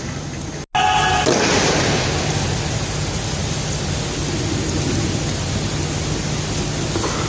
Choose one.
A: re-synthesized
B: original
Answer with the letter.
B